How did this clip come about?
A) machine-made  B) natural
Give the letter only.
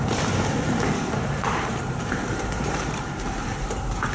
A